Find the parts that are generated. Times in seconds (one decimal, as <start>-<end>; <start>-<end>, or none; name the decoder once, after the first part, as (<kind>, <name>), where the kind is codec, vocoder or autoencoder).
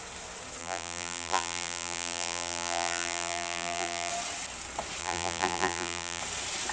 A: 0.6-4.1 (vocoder, BigVGAN v2); 5.0-6.2